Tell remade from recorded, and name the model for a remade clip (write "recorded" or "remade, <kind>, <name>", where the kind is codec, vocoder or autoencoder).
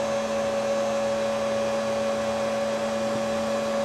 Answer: recorded